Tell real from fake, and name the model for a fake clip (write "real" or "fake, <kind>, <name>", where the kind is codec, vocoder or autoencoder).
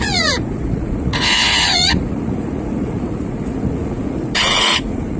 fake, vocoder, Vocos